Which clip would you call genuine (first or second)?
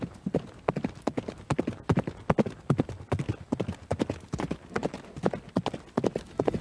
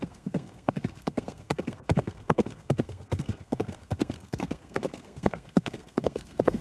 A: first